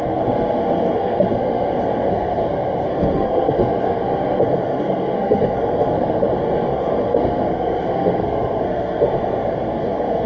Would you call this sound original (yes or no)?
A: no